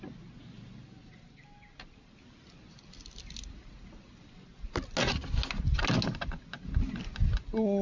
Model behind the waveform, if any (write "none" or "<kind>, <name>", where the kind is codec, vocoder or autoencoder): none